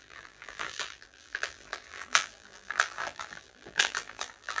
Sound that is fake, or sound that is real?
fake